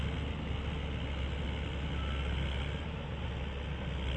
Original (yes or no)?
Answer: yes